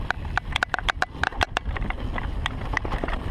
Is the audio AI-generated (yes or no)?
no